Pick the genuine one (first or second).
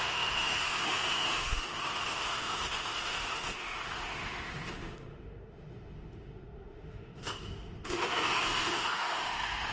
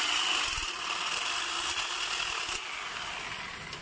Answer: second